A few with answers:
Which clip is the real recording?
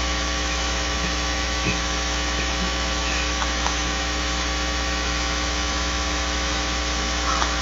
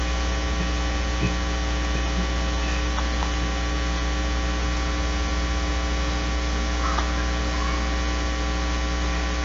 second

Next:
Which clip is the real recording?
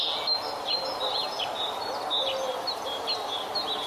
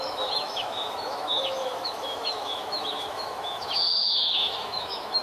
first